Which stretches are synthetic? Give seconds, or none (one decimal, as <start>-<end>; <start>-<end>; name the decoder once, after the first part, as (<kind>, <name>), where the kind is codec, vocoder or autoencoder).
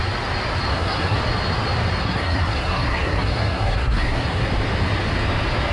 0.7-1.2 (codec, SNAC); 2.0-4.5